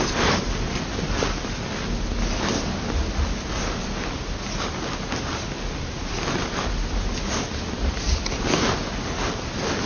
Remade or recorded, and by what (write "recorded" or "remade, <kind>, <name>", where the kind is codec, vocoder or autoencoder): recorded